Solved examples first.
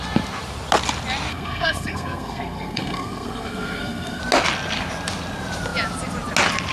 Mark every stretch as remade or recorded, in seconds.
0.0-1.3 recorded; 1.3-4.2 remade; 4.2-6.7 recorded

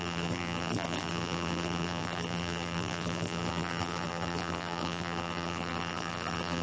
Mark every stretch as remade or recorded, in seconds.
0.0-6.6 remade

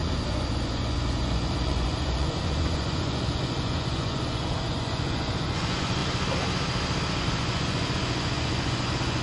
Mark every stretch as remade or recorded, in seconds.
0.0-6.0 remade; 6.0-7.2 recorded; 7.2-9.2 remade

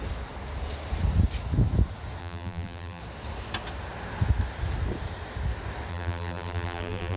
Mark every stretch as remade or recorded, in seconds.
0.0-2.2 recorded; 2.2-3.0 remade; 3.0-5.9 recorded; 5.9-7.2 remade

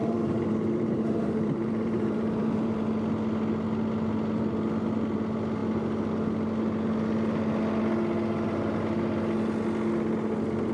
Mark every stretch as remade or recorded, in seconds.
0.0-2.7 remade; 2.7-10.7 recorded

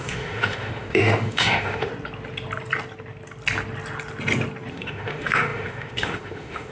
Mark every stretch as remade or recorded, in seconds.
0.0-1.9 remade; 1.9-4.7 recorded; 4.7-6.7 remade